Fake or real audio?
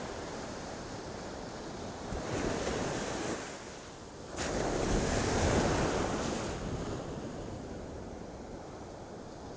fake